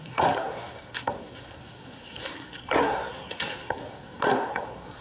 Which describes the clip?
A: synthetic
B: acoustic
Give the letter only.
A